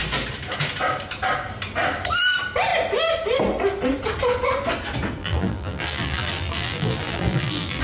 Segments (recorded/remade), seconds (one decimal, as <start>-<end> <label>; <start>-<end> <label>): 0.0-5.2 recorded; 5.2-7.8 remade